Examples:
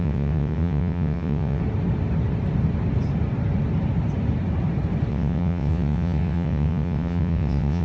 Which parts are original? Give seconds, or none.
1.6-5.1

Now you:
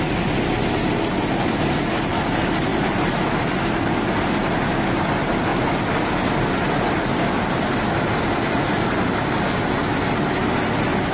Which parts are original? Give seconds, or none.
0.0-11.1

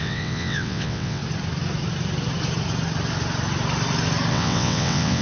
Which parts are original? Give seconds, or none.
1.2-4.3

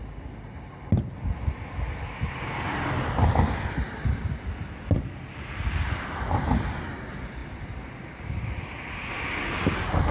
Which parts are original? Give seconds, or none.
0.0-10.1

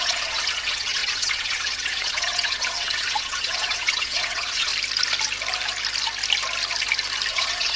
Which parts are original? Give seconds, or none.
4.7-7.3

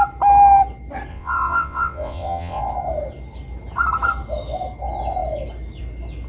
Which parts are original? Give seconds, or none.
0.0-1.1; 2.6-6.3

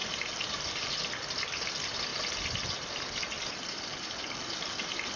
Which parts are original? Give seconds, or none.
0.0-5.2